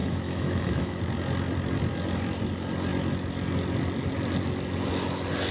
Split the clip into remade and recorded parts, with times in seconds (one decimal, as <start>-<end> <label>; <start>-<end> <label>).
0.0-1.0 remade; 1.0-5.5 recorded